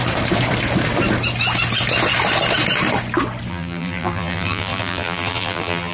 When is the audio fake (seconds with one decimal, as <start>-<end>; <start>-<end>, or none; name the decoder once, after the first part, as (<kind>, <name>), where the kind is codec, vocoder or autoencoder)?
3.5-5.9 (vocoder, BigVGAN v2)